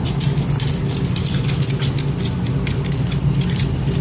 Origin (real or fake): real